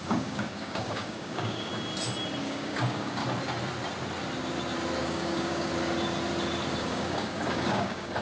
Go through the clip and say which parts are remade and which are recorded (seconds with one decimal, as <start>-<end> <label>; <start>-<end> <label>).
0.0-1.7 remade; 1.7-2.4 recorded; 2.4-3.2 remade; 3.2-5.0 recorded; 5.0-5.7 remade; 5.7-6.8 recorded; 6.8-8.2 remade